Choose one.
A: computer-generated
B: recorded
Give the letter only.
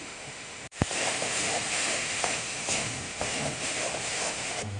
A